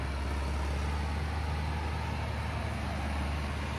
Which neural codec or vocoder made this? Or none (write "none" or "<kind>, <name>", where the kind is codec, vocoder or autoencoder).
none